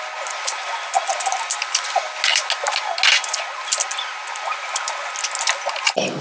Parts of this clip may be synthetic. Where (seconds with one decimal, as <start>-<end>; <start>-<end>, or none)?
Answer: none